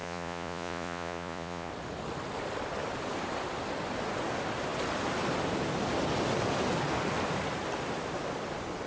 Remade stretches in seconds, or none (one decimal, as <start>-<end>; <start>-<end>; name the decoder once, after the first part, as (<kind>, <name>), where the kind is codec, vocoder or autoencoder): 0.0-1.7 (vocoder, Vocos)